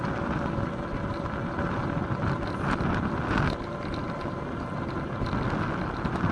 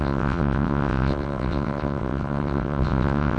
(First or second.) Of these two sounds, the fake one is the second